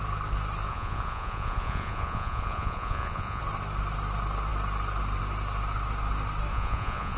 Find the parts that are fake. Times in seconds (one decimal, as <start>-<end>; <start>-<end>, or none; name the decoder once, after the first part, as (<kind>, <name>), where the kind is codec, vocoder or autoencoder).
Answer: 0.7-3.4 (vocoder, Vocos); 6.5-7.2